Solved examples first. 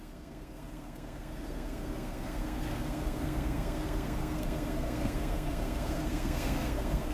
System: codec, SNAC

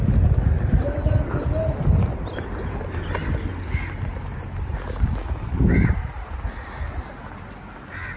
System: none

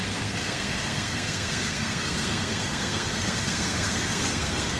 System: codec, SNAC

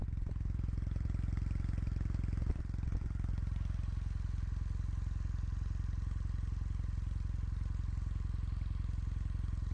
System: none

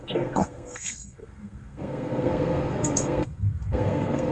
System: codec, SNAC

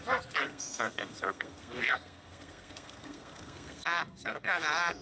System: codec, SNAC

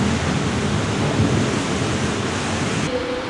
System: none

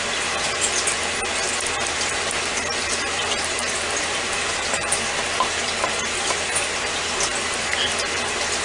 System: none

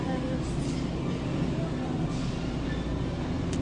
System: none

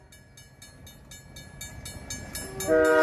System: none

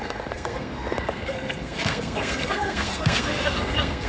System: codec, SNAC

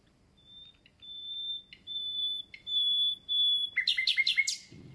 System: none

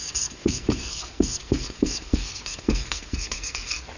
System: codec, SNAC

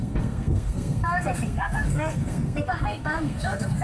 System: codec, SNAC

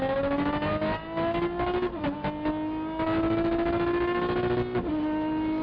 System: none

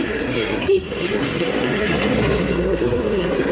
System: codec, SNAC